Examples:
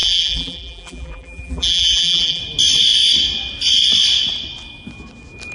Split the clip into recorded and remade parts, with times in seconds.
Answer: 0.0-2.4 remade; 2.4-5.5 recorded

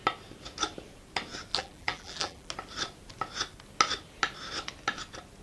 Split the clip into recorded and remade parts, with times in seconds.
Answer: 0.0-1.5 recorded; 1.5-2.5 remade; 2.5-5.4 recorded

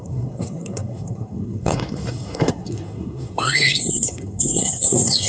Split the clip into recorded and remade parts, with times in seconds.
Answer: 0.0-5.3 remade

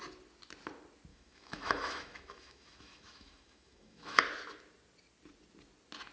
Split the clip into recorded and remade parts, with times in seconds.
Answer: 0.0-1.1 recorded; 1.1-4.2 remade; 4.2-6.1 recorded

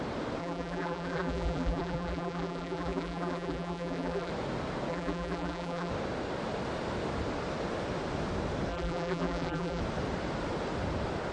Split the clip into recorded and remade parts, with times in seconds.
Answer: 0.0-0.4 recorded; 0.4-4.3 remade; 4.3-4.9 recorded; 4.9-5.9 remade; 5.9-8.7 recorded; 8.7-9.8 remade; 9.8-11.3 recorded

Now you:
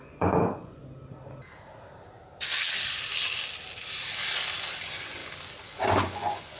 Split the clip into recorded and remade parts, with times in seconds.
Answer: 0.0-0.8 remade; 0.8-4.8 recorded; 4.8-5.2 remade; 5.2-6.0 recorded; 6.0-6.6 remade

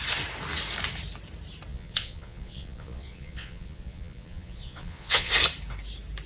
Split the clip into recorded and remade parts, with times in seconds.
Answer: 0.0-1.7 recorded; 1.7-5.3 remade; 5.3-6.3 recorded